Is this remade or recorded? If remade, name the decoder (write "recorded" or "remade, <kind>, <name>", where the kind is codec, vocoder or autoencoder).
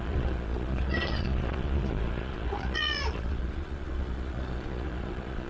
remade, vocoder, Vocos